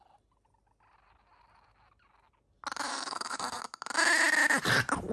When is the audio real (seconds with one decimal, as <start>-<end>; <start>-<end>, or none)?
0.0-2.9; 3.6-5.1